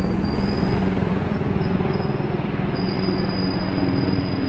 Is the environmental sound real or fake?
fake